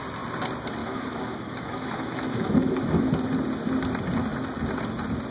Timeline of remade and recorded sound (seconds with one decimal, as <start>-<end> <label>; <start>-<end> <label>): 0.0-0.8 recorded; 0.8-3.0 remade; 3.0-5.3 recorded